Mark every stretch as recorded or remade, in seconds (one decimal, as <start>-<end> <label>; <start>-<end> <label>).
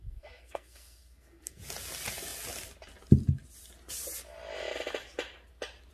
0.0-1.6 remade; 1.6-5.9 recorded